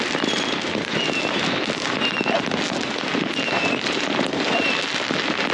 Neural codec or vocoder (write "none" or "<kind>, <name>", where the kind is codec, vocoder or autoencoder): none